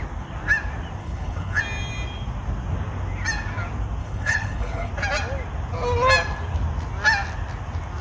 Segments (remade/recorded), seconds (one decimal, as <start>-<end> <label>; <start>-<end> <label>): 0.0-1.0 recorded; 1.0-1.6 remade; 1.6-4.0 recorded; 4.0-4.9 remade; 4.9-8.0 recorded